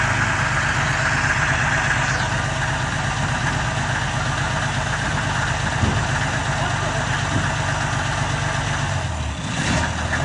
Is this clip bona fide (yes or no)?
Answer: yes